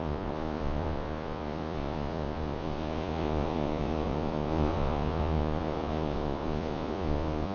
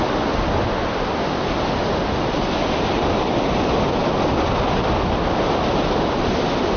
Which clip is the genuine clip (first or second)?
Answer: second